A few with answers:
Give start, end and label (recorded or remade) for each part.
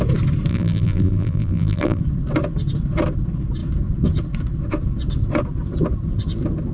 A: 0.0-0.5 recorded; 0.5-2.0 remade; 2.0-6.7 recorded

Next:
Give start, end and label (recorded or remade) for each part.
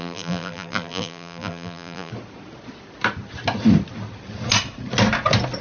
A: 0.0-2.1 remade; 2.1-5.6 recorded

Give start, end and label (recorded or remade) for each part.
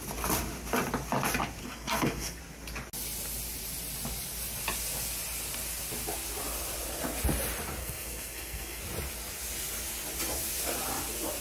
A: 0.0-1.6 recorded; 1.6-2.4 remade; 2.4-7.8 recorded; 7.8-8.8 remade; 8.8-11.4 recorded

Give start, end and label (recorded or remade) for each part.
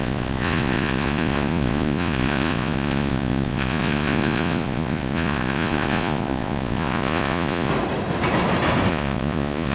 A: 0.0-7.7 remade; 7.7-8.9 recorded; 8.9-9.7 remade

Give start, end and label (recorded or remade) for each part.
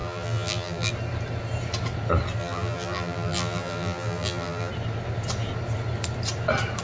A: 0.0-0.9 remade; 0.9-2.4 recorded; 2.4-4.7 remade; 4.7-6.8 recorded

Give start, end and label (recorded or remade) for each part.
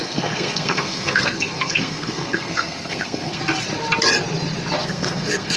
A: 0.0-3.4 remade; 3.4-4.8 recorded; 4.8-5.6 remade